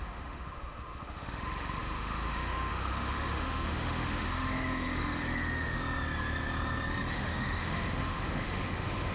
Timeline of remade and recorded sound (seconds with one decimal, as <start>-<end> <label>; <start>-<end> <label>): 0.0-5.8 remade; 5.8-7.1 recorded; 7.1-9.1 remade